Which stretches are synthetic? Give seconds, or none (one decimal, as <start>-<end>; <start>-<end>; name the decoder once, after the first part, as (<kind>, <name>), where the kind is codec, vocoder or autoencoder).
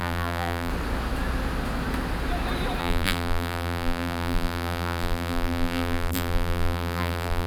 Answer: 0.0-0.7 (vocoder, BigVGAN v2); 2.8-7.5